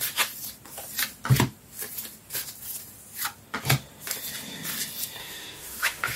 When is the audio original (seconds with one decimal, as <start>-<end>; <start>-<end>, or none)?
0.0-5.2